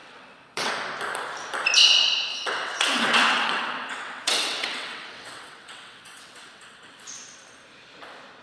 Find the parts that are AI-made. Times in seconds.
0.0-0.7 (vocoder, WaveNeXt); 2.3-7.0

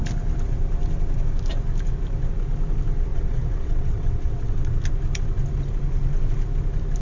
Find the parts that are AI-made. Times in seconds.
3.1-4.7 (vocoder, WaveNeXt)

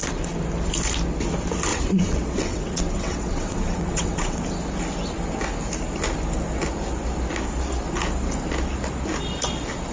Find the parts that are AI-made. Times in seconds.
1.7-4.4 (vocoder, WaveNeXt)